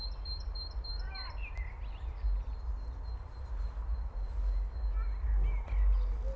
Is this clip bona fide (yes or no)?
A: yes